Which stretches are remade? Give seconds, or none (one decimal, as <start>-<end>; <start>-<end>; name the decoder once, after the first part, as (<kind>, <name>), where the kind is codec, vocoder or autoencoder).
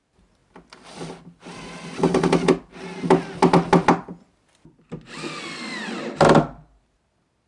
none